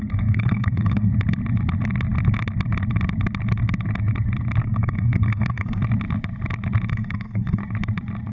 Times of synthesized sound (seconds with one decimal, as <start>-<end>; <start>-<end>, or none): 0.0-1.1; 4.6-5.8; 6.9-7.6